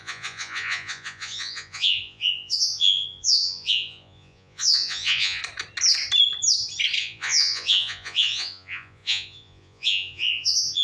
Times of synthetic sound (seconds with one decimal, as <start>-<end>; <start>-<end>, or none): 0.0-5.4; 7.0-10.8